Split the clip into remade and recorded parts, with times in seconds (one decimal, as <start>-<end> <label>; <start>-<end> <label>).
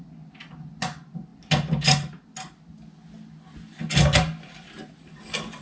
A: 0.0-5.6 recorded